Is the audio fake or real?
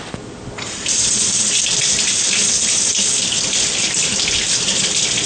real